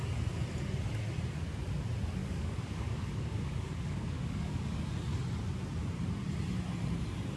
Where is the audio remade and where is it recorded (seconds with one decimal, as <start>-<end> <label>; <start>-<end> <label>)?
0.0-2.2 recorded; 2.2-4.9 remade; 4.9-7.4 recorded